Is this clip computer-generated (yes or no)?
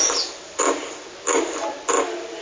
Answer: no